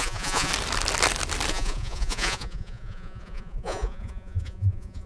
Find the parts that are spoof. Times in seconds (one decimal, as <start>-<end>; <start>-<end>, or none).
0.0-0.5; 1.5-5.1